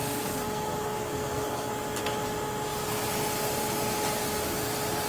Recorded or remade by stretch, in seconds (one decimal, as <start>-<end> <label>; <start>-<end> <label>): 0.0-1.7 remade; 1.7-5.1 recorded